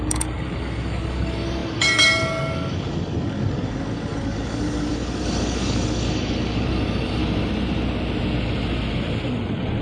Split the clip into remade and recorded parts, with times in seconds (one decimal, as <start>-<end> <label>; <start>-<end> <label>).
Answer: 0.0-7.2 remade; 7.2-9.8 recorded